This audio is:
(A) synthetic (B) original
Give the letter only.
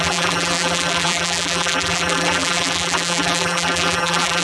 A